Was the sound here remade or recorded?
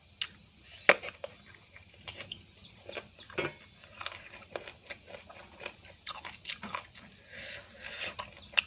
recorded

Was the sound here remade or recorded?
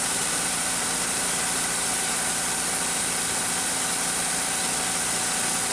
remade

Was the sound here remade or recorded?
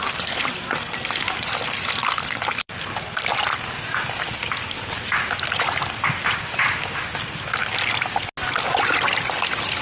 recorded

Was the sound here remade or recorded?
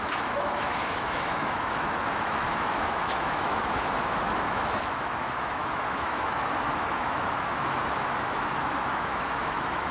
remade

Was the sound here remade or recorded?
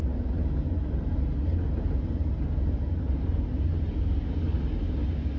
recorded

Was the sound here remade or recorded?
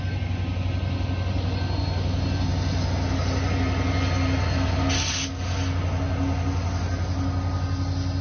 recorded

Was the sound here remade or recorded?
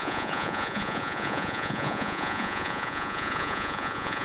remade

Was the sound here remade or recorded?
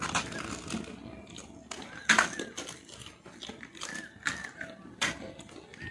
recorded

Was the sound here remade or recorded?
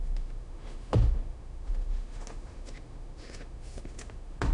remade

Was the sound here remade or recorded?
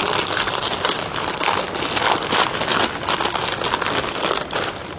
recorded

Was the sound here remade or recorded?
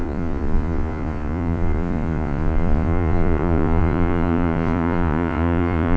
remade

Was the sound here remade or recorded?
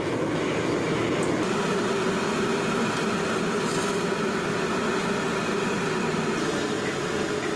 recorded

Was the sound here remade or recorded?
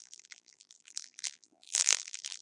remade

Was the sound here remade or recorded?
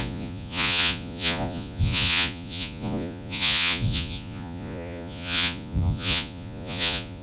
remade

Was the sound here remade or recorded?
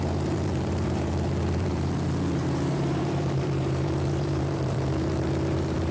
remade